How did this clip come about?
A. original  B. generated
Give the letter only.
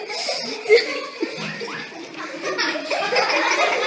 A